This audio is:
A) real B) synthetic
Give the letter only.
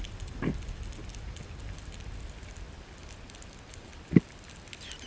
A